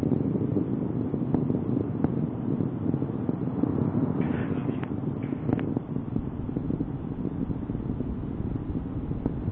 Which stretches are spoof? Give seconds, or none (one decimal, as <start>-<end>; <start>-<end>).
0.0-9.5